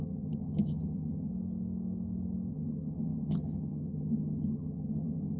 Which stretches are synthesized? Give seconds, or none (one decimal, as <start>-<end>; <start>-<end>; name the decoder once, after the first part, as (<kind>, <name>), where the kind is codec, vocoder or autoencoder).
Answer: 0.0-1.3 (vocoder, HiFi-GAN); 2.5-5.4